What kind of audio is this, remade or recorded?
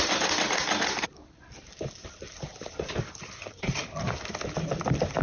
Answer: remade